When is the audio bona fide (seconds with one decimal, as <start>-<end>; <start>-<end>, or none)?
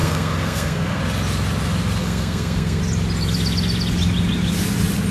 1.0-2.0; 2.8-5.1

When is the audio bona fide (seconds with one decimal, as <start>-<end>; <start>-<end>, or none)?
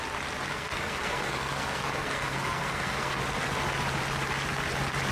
0.0-0.5; 3.2-5.1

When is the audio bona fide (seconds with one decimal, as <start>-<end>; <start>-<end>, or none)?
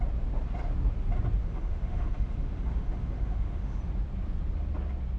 0.0-1.4; 3.8-5.2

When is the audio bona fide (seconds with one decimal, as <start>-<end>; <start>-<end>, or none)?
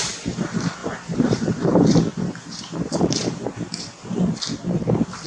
0.0-0.8; 1.6-2.1; 4.2-5.3